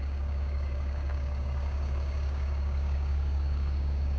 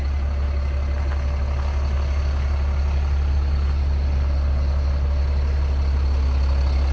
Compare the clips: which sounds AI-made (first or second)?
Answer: first